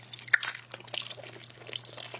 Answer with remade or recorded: recorded